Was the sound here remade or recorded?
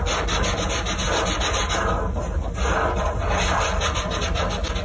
recorded